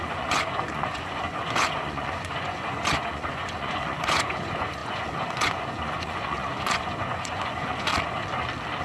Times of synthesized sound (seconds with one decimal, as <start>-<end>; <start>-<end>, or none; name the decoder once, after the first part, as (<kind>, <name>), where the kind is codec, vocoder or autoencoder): 0.0-7.9 (vocoder, Vocos)